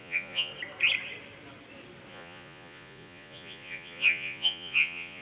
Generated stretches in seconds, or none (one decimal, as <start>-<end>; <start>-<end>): 0.0-0.5; 2.1-5.2